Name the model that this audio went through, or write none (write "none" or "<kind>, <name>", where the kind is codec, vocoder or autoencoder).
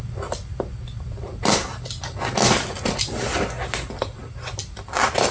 none